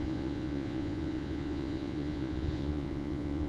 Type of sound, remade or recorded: remade